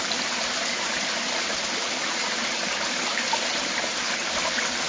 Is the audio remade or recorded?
recorded